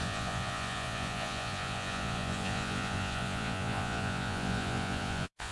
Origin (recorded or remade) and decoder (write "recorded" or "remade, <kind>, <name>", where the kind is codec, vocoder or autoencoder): remade, vocoder, Vocos